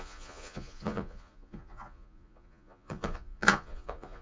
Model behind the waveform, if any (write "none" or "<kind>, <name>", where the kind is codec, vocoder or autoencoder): vocoder, Vocos